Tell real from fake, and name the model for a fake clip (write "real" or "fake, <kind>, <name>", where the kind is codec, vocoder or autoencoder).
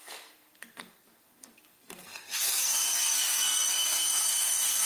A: fake, codec, SNAC